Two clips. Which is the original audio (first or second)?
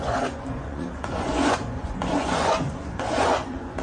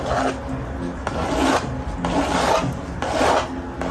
second